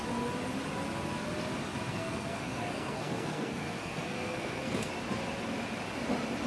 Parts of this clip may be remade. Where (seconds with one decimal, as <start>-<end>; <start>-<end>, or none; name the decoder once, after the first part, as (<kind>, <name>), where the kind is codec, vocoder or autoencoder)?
1.9-4.9 (codec, SNAC)